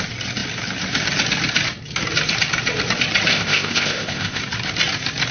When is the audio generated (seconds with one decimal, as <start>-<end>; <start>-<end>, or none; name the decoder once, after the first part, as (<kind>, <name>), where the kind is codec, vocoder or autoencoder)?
3.3-4.4 (codec, ZipCodec)